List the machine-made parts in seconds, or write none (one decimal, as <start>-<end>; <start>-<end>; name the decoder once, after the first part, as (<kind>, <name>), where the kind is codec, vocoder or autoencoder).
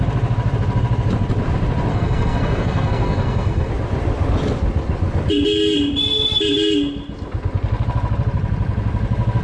1.9-3.7 (codec, SNAC)